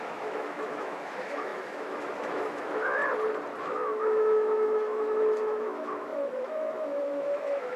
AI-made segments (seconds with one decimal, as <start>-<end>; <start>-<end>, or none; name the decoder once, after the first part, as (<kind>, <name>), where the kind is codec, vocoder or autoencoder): 0.0-3.0 (autoencoder, DAC-VAE); 3.6-7.8